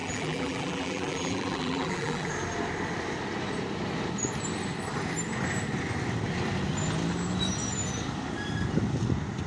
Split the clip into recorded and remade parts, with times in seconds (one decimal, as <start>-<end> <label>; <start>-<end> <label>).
0.0-2.3 remade; 2.3-9.5 recorded